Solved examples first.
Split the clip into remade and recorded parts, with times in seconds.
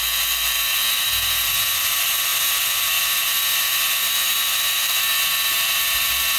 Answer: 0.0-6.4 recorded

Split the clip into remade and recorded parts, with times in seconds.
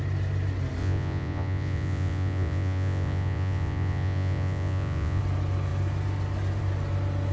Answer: 0.0-0.8 recorded; 0.8-5.2 remade; 5.2-7.3 recorded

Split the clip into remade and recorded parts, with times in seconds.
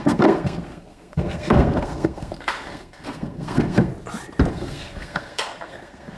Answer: 0.0-3.9 remade; 3.9-4.5 recorded; 4.5-6.2 remade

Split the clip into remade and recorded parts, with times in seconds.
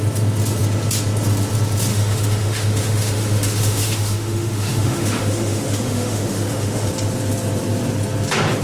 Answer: 0.0-1.9 recorded; 1.9-6.9 remade; 6.9-8.6 recorded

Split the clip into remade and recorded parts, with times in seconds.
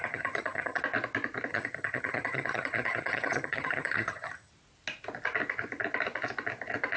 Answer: 0.0-0.8 remade; 0.8-1.5 recorded; 1.5-4.5 remade; 4.5-7.0 recorded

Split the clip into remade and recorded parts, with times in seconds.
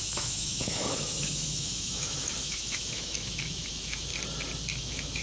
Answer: 0.0-4.1 remade; 4.1-4.8 recorded; 4.8-5.2 remade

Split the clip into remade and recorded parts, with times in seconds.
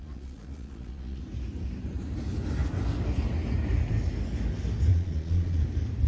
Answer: 0.0-1.2 remade; 1.2-4.9 recorded; 4.9-5.6 remade; 5.6-6.1 recorded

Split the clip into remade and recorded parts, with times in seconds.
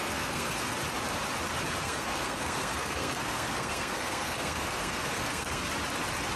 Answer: 0.0-0.7 remade; 0.7-1.8 recorded; 1.8-5.6 remade; 5.6-6.4 recorded